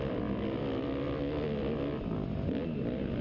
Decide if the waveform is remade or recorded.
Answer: recorded